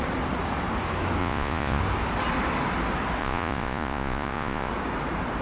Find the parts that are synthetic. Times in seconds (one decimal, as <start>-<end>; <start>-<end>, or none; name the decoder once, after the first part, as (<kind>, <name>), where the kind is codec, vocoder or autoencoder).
1.2-1.8 (vocoder, Vocos); 3.2-4.7